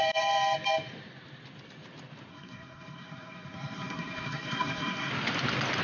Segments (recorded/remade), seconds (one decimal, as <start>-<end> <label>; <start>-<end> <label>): 0.0-2.3 recorded; 2.3-5.1 remade; 5.1-5.8 recorded